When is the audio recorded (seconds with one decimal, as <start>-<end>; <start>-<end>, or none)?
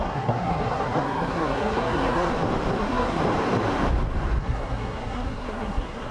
2.3-2.8; 3.2-4.4